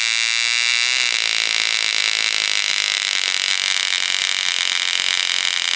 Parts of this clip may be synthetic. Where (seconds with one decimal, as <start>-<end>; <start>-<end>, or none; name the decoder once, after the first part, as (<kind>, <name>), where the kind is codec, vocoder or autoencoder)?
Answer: none